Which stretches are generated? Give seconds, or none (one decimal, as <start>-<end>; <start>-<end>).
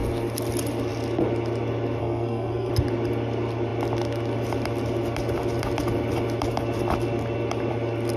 2.0-2.7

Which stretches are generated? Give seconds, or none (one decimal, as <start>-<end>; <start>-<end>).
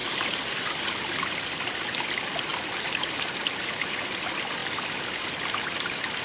none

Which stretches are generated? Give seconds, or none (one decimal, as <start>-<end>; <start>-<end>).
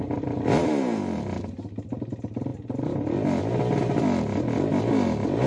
none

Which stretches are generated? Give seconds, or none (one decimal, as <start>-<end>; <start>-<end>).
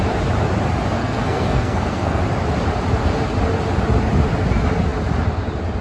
1.0-2.2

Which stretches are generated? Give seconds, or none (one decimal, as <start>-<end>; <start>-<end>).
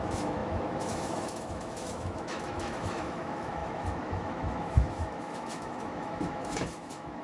0.0-7.2